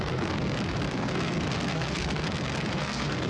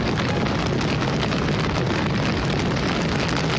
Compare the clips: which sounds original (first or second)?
second